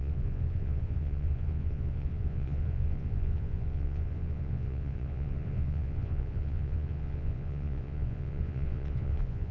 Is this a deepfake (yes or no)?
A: yes